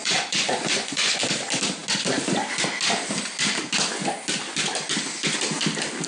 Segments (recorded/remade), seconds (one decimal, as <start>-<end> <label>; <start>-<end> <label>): 0.0-1.2 remade; 1.2-6.1 recorded